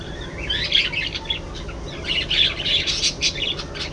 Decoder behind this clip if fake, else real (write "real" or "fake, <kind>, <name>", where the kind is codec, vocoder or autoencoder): real